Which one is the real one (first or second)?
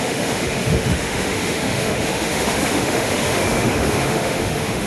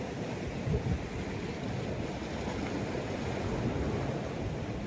second